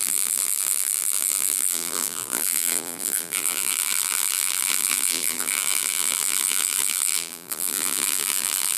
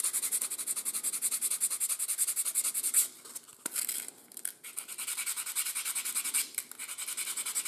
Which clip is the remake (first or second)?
first